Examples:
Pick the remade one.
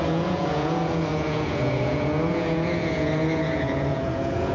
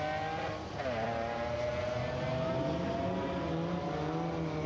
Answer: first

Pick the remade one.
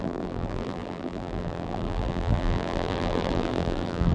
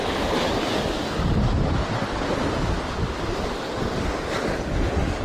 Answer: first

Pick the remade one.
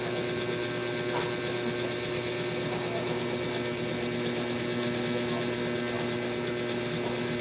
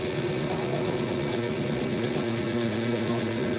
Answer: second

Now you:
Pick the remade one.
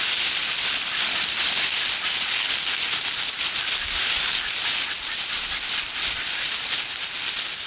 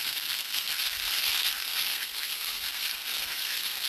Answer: second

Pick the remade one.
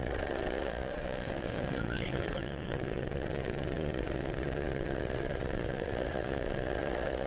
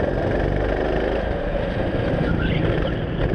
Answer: first